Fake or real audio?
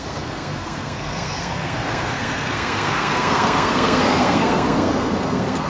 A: fake